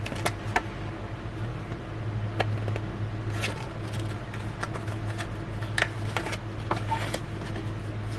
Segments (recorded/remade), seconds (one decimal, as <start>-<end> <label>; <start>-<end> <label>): 0.0-8.2 recorded

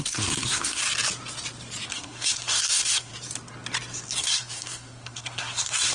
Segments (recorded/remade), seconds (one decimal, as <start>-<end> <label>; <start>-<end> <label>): 0.0-0.8 remade; 0.8-1.9 recorded; 1.9-3.1 remade; 3.1-4.2 recorded; 4.2-5.9 remade